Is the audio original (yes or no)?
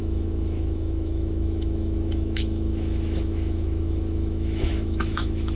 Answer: no